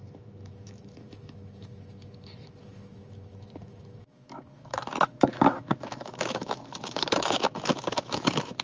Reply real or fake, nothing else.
fake